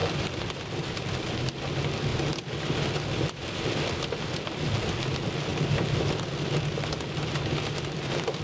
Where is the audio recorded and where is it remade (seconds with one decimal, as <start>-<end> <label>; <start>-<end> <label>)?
0.0-1.3 remade; 1.3-2.1 recorded; 2.1-3.9 remade; 3.9-8.4 recorded